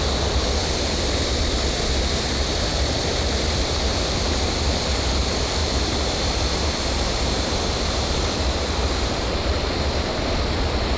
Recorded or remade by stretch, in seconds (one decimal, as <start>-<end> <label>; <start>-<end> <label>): 0.0-5.6 recorded; 5.6-10.2 remade; 10.2-11.0 recorded